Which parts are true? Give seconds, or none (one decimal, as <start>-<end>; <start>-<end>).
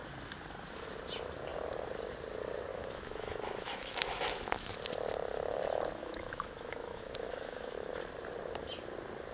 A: 0.0-2.7; 4.7-6.0; 7.9-9.3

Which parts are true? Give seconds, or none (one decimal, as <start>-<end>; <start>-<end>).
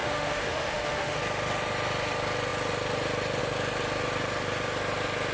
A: 1.2-5.3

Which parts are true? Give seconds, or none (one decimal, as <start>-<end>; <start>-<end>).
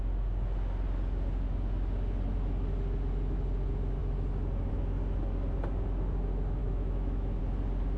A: 0.0-6.6; 7.4-8.0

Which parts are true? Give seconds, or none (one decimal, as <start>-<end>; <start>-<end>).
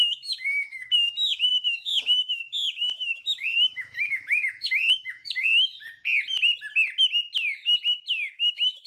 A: 5.7-8.3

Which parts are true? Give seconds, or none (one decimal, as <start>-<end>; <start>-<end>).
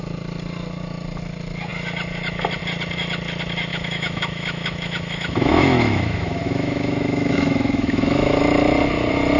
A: 0.0-3.7; 8.4-9.4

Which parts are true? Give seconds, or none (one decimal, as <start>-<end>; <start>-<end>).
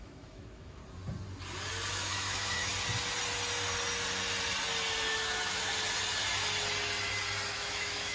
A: 0.8-1.9; 2.7-5.1; 5.7-7.5